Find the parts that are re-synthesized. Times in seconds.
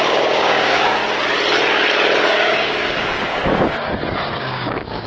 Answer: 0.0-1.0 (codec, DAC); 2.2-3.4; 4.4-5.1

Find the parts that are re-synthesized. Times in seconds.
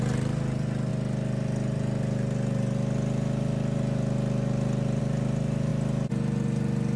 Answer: none